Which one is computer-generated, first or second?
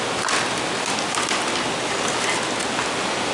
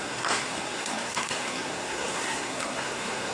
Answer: second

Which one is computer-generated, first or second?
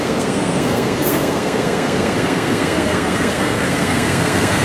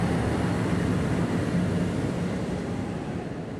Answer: first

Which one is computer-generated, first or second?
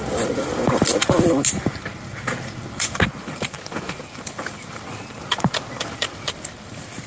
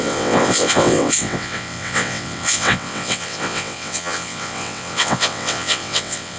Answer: second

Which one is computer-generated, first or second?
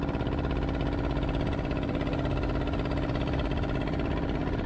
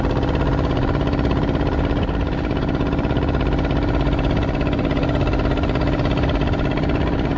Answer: second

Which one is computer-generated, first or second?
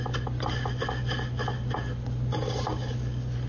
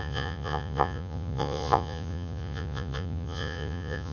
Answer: second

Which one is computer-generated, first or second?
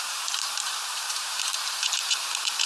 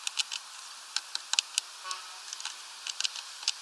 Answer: first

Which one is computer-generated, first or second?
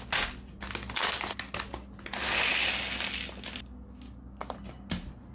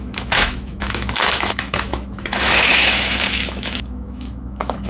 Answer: second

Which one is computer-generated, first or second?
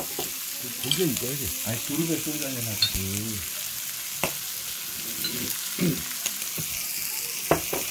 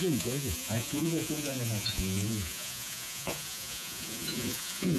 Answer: second